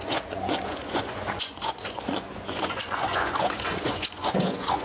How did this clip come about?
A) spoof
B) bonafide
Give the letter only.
A